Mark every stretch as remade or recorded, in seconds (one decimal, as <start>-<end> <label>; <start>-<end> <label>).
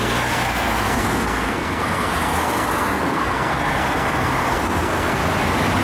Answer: 0.0-5.2 remade; 5.2-5.8 recorded